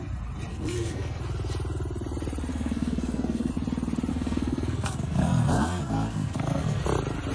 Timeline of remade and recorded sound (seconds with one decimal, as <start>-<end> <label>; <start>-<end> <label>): 0.0-0.5 recorded; 0.5-1.2 remade; 1.2-2.5 recorded; 2.5-3.5 remade; 3.5-4.1 recorded; 4.1-6.8 remade; 6.8-7.3 recorded